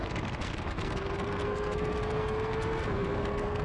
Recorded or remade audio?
remade